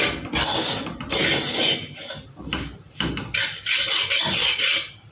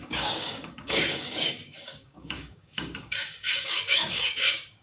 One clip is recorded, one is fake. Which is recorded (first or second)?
first